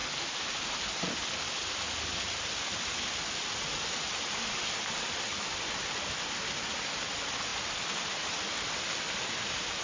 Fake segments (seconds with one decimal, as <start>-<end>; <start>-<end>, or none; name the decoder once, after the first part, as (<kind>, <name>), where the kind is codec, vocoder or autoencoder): none